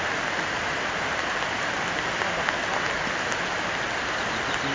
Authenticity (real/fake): real